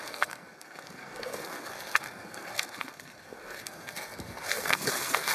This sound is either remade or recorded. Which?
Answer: remade